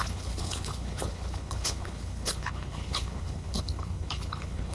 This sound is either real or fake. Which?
fake